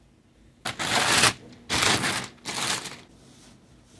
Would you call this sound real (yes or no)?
yes